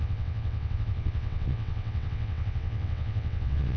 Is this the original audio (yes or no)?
no